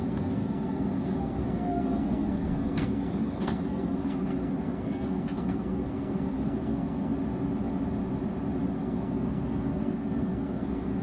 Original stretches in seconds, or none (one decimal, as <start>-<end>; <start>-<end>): 7.1-8.7